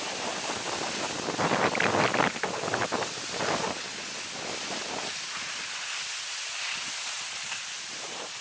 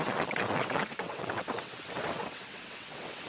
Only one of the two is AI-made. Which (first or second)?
second